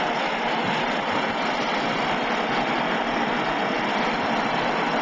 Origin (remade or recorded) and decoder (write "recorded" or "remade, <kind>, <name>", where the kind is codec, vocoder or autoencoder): recorded